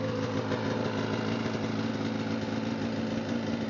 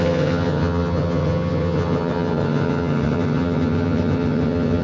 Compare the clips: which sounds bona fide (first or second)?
first